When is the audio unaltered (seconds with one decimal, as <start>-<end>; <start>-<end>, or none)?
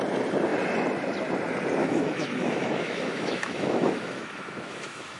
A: 0.0-1.8